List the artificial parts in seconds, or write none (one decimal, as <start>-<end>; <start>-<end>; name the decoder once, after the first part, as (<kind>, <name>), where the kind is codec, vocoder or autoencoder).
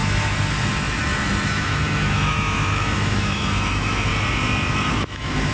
1.5-4.1 (autoencoder, DAC-VAE); 4.9-5.5